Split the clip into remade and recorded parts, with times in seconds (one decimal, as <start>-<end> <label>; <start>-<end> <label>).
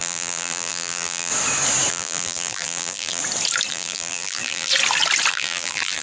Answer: 0.0-1.3 remade; 1.3-1.9 recorded; 1.9-3.2 remade; 3.2-3.7 recorded; 3.7-4.7 remade; 4.7-5.3 recorded; 5.3-6.0 remade